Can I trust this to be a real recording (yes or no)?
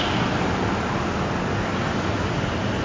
yes